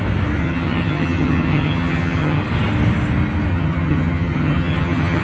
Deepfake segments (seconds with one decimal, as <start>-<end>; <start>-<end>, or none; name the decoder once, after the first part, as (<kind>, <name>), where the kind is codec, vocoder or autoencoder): 0.4-2.4 (vocoder, HiFi-GAN); 3.5-5.2